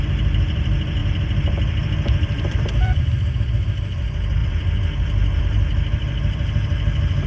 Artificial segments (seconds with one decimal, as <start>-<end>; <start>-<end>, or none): 0.0-7.3